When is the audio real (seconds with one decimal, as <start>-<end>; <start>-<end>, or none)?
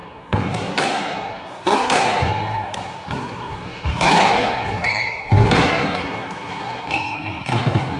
none